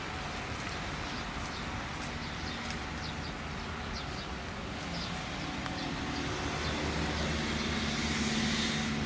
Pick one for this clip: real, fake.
real